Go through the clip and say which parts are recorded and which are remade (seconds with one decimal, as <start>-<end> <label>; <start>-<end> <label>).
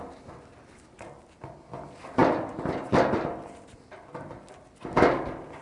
0.0-5.6 recorded